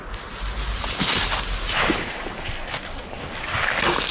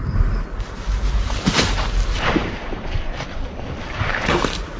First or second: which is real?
first